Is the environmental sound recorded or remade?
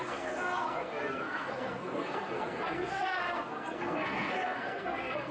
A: remade